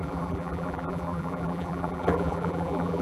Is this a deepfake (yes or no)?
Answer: yes